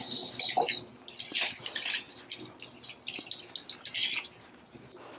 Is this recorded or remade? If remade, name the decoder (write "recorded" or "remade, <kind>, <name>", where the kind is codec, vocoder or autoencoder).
recorded